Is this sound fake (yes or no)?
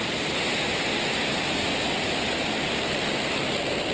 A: no